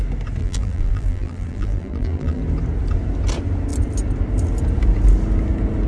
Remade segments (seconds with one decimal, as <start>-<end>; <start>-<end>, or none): 0.4-2.4